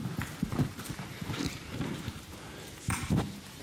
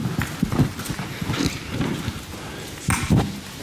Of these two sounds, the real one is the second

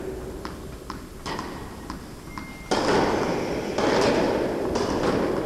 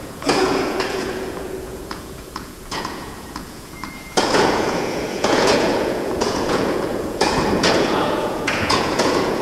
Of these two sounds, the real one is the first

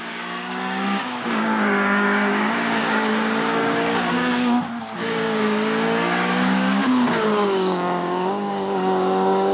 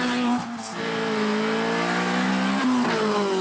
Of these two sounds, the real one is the second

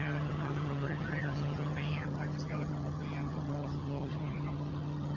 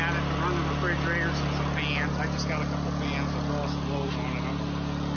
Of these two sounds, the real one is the second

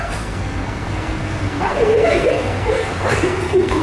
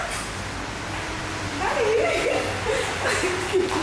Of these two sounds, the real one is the second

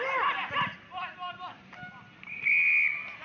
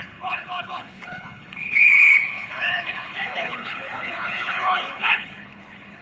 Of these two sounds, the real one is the first